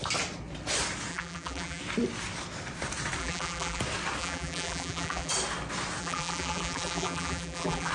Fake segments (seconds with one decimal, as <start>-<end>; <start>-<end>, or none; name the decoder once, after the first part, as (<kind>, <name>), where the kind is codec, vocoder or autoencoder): 1.1-1.8 (vocoder, BigVGAN v2); 3.2-3.8; 4.2-5.3; 6.0-7.9